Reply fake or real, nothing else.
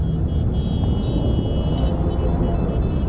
real